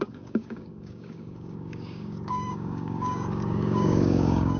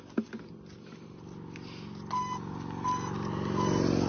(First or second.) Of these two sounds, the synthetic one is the first